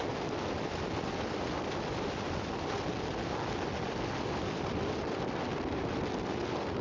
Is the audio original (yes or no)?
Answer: yes